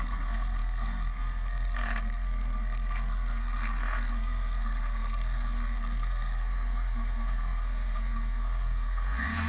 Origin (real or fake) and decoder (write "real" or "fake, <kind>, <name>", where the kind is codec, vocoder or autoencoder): fake, codec, SNAC